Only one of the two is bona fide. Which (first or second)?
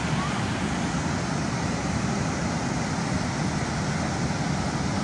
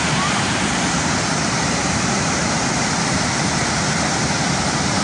first